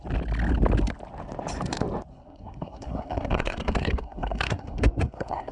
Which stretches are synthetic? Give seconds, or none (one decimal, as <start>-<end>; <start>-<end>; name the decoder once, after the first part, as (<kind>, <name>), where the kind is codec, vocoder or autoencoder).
2.1-5.5 (codec, SNAC)